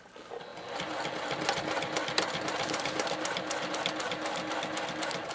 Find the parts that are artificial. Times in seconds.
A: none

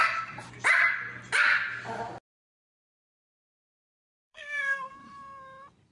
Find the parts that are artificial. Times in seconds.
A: 4.0-4.9